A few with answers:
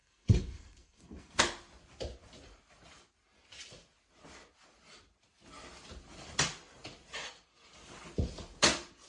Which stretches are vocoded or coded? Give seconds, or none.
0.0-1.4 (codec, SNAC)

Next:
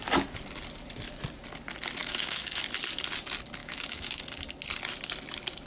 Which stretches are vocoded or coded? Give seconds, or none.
2.0-2.6 (autoencoder, DAC-VAE); 3.6-4.2

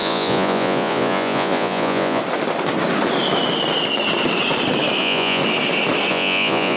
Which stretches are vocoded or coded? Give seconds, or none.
0.0-2.2 (vocoder, Vocos); 5.0-5.4; 6.1-6.8

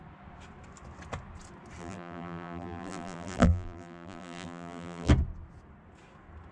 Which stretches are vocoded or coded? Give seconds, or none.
1.8-5.1 (vocoder, BigVGAN v2)

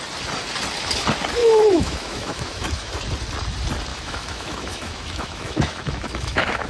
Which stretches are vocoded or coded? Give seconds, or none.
1.4-2.9 (autoencoder, DAC-VAE); 3.9-6.7

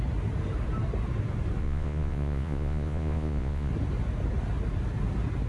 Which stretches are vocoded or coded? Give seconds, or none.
1.6-3.7 (vocoder, Vocos)

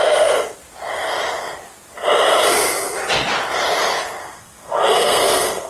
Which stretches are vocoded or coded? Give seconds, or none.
4.2-5.7 (codec, SNAC)

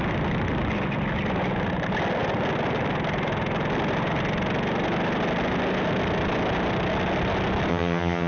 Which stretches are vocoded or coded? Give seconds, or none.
7.7-8.3 (vocoder, HiFi-GAN)